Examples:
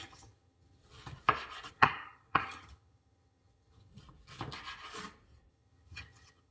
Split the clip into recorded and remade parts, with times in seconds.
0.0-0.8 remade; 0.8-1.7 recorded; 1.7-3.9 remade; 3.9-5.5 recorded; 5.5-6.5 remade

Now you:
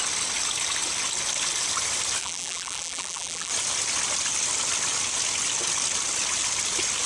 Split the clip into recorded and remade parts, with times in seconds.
0.0-2.2 recorded; 2.2-3.5 remade; 3.5-7.1 recorded

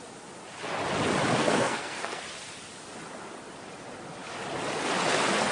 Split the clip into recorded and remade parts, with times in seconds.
0.0-1.4 recorded; 1.4-2.2 remade; 2.2-5.5 recorded

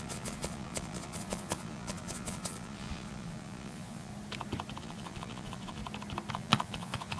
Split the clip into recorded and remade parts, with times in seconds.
0.0-4.1 remade; 4.1-4.8 recorded; 4.8-5.8 remade; 5.8-6.3 recorded; 6.3-7.2 remade

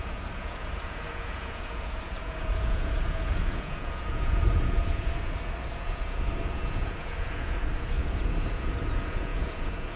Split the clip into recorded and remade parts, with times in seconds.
0.0-10.0 remade

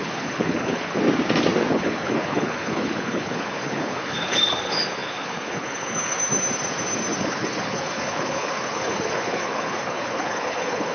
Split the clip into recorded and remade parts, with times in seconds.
0.0-1.0 remade; 1.0-1.7 recorded; 1.7-6.2 remade; 6.2-7.2 recorded; 7.2-10.9 remade

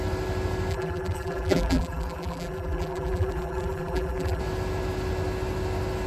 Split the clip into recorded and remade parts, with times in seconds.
0.0-0.7 recorded; 0.7-4.4 remade; 4.4-6.1 recorded